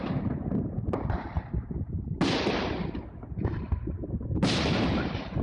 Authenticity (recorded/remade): recorded